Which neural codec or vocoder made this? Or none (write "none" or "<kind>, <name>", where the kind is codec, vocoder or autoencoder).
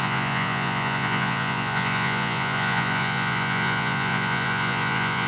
vocoder, Vocos